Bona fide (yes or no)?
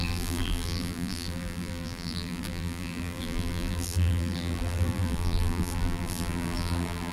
no